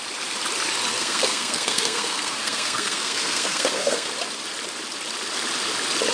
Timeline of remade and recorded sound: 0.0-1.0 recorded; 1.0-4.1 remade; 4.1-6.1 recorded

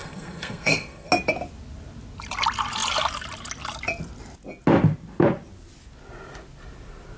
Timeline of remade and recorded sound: 0.0-1.1 remade; 1.1-7.2 recorded